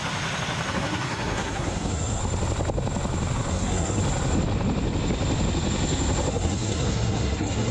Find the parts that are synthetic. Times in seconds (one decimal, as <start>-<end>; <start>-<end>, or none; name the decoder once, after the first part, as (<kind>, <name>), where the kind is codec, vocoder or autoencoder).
0.7-2.2 (codec, SNAC); 3.5-4.0; 6.3-7.7